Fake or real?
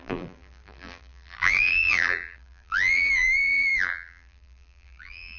fake